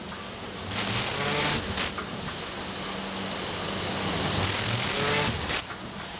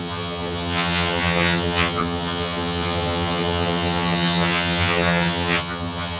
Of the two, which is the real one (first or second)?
first